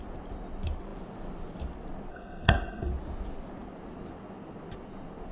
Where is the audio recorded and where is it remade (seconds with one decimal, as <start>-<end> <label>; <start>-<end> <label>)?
0.0-2.1 recorded; 2.1-2.9 remade; 2.9-5.3 recorded